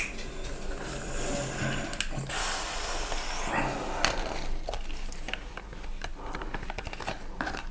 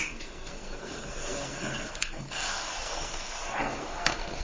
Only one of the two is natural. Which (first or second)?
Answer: first